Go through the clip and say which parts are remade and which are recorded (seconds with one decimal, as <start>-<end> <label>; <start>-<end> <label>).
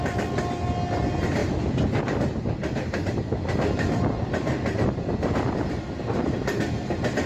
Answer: 0.0-7.3 recorded